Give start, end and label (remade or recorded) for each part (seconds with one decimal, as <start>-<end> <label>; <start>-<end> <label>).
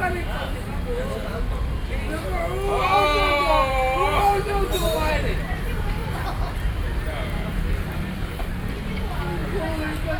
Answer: 0.0-3.7 recorded; 3.7-6.0 remade; 6.0-6.6 recorded; 6.6-10.2 remade